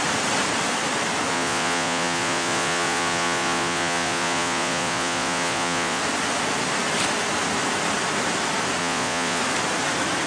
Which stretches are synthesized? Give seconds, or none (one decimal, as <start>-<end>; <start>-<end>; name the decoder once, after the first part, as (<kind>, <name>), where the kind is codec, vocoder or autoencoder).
1.3-6.0 (vocoder, Vocos); 8.8-9.4